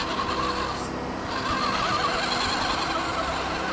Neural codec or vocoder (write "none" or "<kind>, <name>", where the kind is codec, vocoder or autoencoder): none